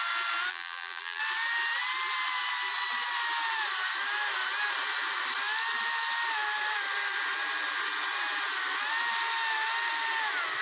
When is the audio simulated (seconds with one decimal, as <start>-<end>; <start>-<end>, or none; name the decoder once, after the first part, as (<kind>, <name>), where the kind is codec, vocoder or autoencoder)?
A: 0.5-1.2 (vocoder, BigVGAN v2)